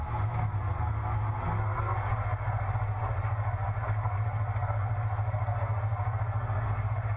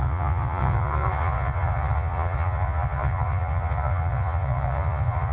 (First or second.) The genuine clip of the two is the first